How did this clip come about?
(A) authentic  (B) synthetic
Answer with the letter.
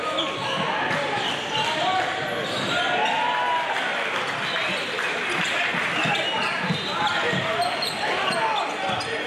A